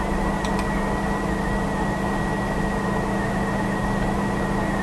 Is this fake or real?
real